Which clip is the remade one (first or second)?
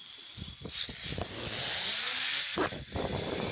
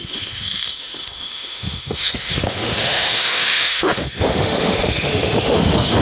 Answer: second